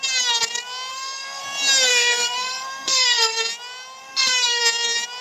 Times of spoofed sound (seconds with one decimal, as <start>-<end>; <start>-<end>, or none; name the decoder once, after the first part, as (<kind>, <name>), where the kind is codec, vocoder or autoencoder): 0.9-1.4 (codec, SNAC); 1.9-3.4; 4.0-4.6